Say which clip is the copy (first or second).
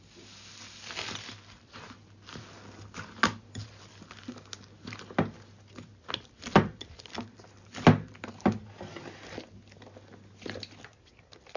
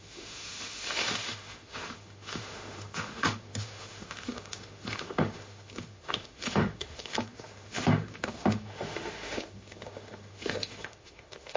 second